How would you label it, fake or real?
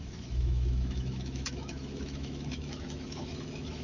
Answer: fake